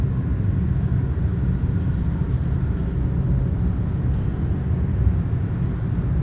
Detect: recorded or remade recorded